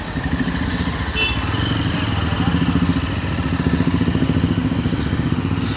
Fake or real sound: real